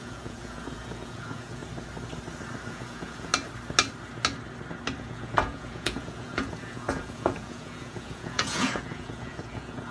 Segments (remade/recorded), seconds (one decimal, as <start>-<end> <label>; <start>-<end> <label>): 0.0-1.6 remade; 1.6-2.7 recorded; 2.7-3.3 remade; 3.3-5.0 recorded; 5.0-9.9 remade